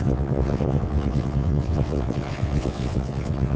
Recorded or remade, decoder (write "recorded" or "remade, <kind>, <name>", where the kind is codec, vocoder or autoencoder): remade, vocoder, WaveNeXt